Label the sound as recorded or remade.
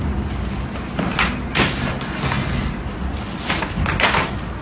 recorded